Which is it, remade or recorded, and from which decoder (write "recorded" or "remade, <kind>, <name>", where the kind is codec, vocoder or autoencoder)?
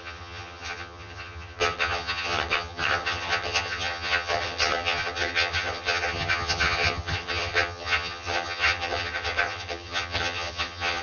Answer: remade, vocoder, HiFi-GAN